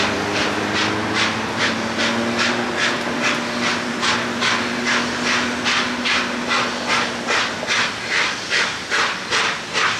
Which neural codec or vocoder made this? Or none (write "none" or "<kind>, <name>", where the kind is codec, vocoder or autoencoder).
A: none